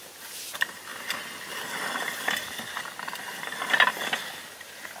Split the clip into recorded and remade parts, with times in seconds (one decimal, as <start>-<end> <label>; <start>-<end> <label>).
0.0-0.9 remade; 0.9-3.9 recorded; 3.9-5.0 remade